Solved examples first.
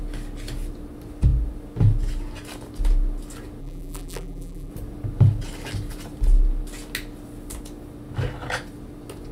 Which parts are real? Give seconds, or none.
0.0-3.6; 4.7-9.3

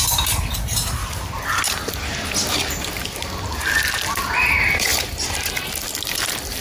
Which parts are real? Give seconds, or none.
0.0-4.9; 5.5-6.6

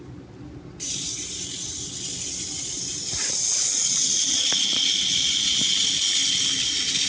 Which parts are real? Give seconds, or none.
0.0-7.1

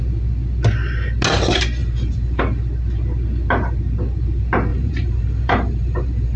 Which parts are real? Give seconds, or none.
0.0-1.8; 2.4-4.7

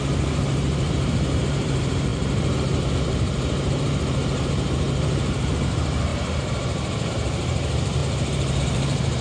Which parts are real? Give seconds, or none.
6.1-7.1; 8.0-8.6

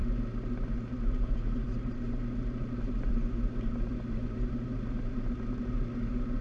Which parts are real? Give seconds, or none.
0.0-0.7

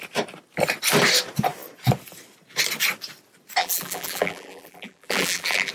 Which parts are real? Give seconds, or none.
0.0-3.6